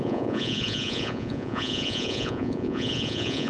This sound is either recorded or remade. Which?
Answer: remade